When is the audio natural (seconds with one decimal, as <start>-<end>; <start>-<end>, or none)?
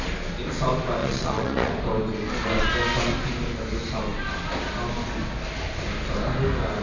0.0-1.0; 1.7-6.8